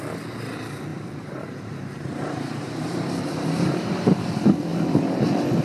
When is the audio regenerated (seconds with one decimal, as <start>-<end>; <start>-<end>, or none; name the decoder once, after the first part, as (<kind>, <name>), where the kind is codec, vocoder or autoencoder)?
0.9-4.3 (vocoder, BigVGAN v2)